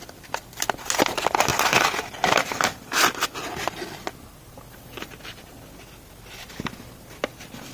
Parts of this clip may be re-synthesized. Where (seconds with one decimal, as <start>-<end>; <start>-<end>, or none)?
none